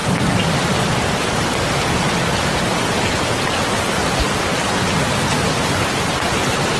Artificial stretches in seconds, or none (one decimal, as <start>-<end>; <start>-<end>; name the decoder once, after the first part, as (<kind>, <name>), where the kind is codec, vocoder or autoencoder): none